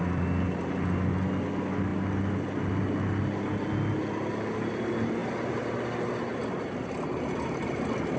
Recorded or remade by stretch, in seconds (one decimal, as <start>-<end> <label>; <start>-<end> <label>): 0.0-8.2 recorded